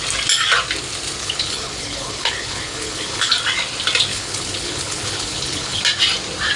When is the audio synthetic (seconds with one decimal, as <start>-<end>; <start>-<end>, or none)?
1.2-3.3; 4.1-5.8